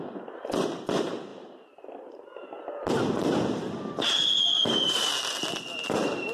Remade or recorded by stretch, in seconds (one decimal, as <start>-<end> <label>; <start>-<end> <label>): 0.0-6.3 recorded